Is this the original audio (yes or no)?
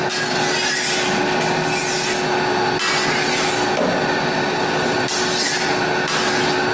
yes